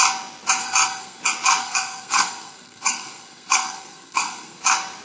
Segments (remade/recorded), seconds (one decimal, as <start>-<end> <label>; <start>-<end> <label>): 0.0-0.6 recorded; 0.6-1.2 remade; 1.2-1.6 recorded; 1.6-4.6 remade; 4.6-5.0 recorded